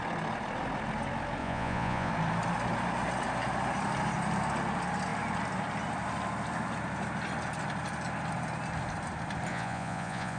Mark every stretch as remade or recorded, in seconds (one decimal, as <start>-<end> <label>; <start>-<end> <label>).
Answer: 0.0-1.4 recorded; 1.4-2.1 remade; 2.1-9.5 recorded; 9.5-10.4 remade